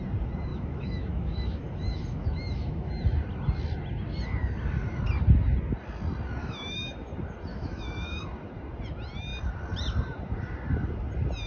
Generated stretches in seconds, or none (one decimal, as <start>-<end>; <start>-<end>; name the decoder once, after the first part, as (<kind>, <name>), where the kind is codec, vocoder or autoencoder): 0.5-2.9 (autoencoder, DAC-VAE); 6.4-7.1; 7.5-8.2